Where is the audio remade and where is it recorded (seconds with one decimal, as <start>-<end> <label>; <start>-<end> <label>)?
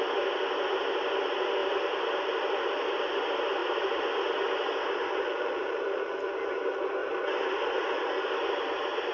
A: 0.0-1.6 recorded; 1.6-3.0 remade; 3.0-7.0 recorded; 7.0-8.1 remade; 8.1-9.1 recorded